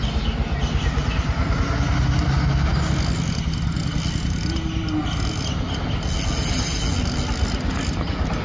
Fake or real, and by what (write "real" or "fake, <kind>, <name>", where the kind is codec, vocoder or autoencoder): real